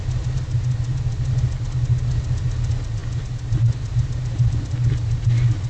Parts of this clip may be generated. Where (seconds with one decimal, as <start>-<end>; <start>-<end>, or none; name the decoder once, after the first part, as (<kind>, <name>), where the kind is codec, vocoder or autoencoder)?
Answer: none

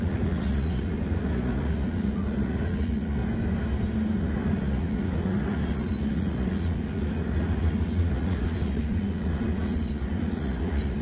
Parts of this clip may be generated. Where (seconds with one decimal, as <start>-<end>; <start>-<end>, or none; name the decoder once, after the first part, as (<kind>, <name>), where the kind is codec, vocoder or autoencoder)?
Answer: 0.0-3.2 (vocoder, Vocos); 4.2-11.0

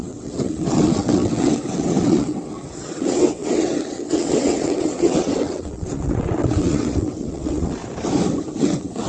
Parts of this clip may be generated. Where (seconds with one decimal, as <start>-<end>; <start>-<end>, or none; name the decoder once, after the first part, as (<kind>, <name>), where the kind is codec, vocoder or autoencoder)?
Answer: 0.0-7.8 (vocoder, WaveNeXt); 8.6-9.1

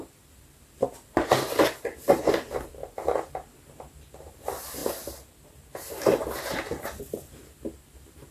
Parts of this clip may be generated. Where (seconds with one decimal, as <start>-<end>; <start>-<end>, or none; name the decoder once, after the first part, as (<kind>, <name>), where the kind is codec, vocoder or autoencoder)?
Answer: none

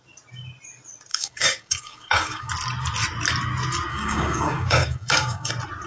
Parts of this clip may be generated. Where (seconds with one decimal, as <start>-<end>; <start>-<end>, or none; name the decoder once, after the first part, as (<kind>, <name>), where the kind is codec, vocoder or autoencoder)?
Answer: 1.1-2.5 (codec, DAC); 3.9-5.5

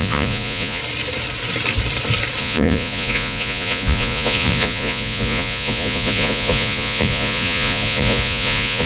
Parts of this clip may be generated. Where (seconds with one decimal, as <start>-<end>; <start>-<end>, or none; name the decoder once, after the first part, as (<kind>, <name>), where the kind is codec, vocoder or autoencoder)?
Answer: 0.0-0.8 (vocoder, Vocos); 2.4-8.9

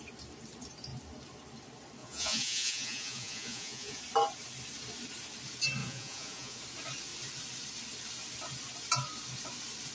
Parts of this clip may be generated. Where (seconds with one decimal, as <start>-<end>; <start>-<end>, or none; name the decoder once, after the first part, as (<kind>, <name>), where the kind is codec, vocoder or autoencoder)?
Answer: 2.0-4.0 (vocoder, Vocos); 5.8-6.6